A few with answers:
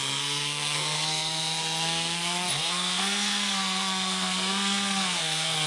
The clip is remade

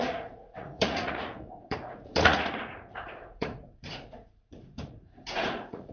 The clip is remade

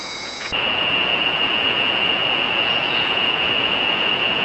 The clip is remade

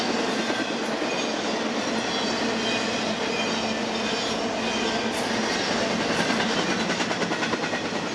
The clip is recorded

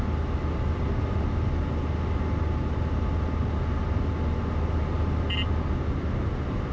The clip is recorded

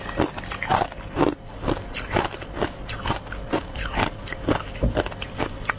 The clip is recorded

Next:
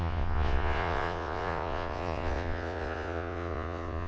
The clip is remade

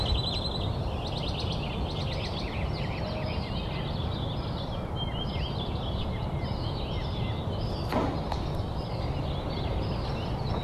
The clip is recorded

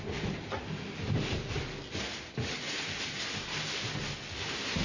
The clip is recorded